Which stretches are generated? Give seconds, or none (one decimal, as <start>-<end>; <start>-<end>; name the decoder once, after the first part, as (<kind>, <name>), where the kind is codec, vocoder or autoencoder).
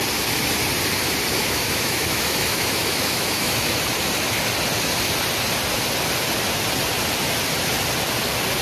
1.4-3.8 (autoencoder, DAC-VAE)